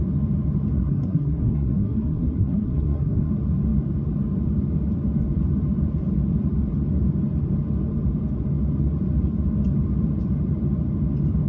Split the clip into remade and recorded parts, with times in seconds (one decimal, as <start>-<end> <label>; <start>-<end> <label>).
0.0-0.8 recorded; 0.8-3.3 remade; 3.3-11.5 recorded